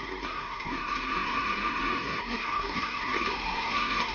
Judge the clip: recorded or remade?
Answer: remade